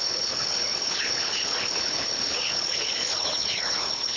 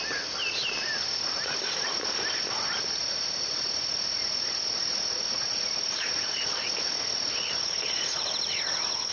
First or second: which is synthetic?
first